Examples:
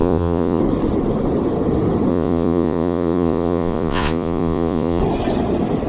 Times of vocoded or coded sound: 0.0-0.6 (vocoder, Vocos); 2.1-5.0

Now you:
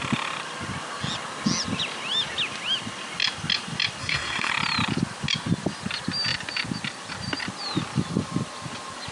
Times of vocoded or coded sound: 4.0-4.5 (codec, SNAC)

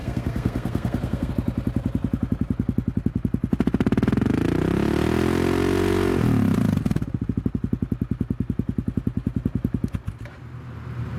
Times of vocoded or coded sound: 0.0-1.3 (codec, SNAC)

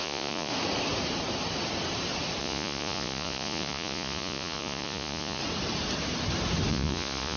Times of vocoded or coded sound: 0.0-0.5 (vocoder, Vocos); 2.4-5.4; 6.7-7.4

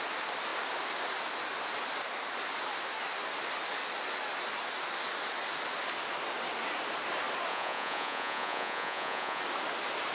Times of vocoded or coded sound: 7.5-9.4 (vocoder, Vocos)